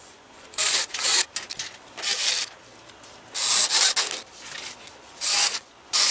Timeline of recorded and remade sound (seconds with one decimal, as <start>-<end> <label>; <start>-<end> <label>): 0.0-1.1 remade; 1.1-4.8 recorded; 4.8-6.1 remade